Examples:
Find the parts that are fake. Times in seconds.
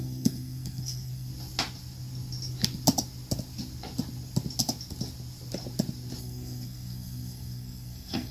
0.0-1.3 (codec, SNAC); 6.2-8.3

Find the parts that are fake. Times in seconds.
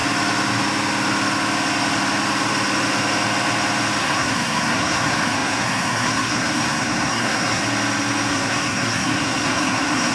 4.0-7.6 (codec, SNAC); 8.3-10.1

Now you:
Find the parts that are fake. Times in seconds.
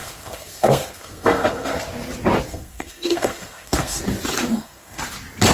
0.0-1.8 (codec, SNAC); 2.5-4.0; 4.5-5.0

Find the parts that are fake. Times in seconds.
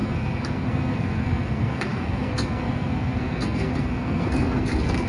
0.0-5.1 (codec, SNAC)